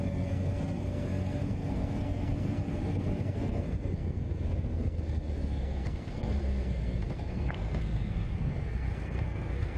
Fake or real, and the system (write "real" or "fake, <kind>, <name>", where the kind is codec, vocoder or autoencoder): fake, codec, SNAC